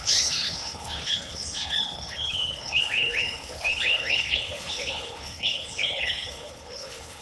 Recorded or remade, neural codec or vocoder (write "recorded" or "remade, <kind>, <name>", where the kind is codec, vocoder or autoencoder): remade, codec, HILCodec